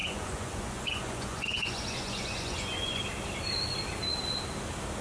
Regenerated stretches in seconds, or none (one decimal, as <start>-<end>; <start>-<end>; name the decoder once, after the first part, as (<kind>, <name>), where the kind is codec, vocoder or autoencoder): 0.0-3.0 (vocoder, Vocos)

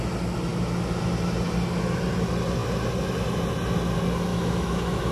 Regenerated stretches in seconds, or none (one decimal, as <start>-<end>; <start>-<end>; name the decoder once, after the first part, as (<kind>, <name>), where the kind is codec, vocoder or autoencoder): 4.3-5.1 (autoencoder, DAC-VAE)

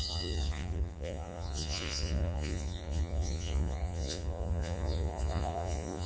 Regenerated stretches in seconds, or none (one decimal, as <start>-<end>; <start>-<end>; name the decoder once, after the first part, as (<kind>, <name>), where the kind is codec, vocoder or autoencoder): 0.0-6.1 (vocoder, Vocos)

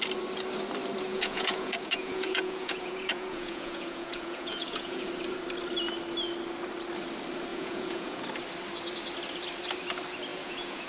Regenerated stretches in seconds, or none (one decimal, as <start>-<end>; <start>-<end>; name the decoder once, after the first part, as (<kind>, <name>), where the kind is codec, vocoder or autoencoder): 1.1-5.1 (vocoder, Vocos); 7.5-8.2; 10.3-10.9